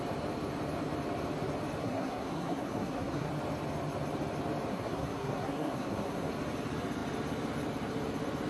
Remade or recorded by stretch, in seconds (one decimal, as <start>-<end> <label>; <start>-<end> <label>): 0.0-1.8 recorded; 1.8-3.3 remade; 3.3-4.7 recorded; 4.7-6.3 remade; 6.3-8.5 recorded